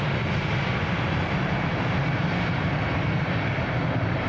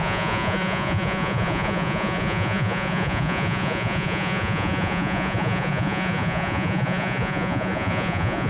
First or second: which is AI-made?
second